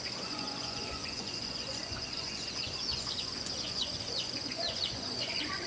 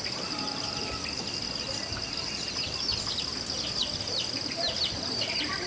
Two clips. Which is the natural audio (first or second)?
second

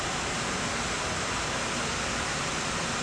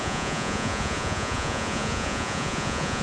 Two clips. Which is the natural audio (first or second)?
first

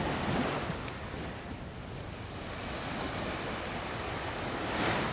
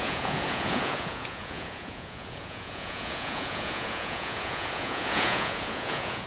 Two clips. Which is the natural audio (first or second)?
first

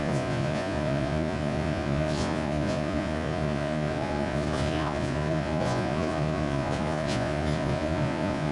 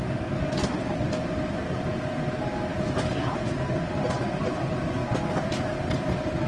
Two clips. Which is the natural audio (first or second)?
second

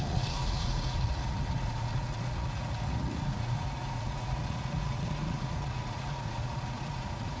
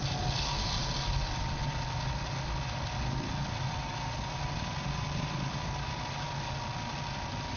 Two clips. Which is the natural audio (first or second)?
second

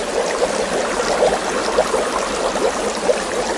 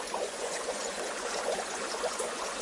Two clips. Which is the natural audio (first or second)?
first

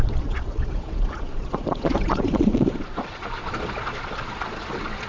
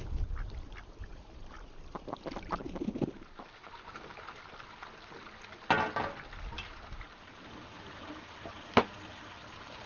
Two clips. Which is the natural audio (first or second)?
second